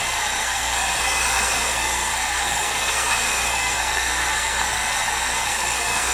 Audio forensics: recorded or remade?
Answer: remade